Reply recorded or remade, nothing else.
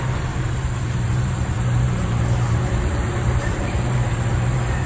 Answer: remade